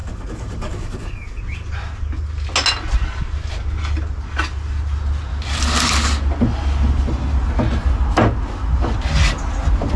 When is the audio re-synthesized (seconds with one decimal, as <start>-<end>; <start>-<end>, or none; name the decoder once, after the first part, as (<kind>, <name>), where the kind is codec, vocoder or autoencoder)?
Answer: 0.0-1.4 (codec, DAC)